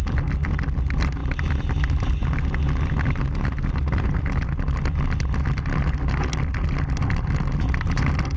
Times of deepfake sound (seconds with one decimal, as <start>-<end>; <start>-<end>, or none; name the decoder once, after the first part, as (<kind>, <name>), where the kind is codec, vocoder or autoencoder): none